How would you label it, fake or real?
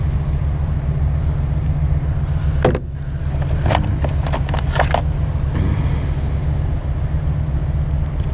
real